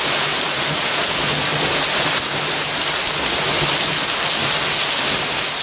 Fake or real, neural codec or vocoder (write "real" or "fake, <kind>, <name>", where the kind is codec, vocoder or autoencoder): real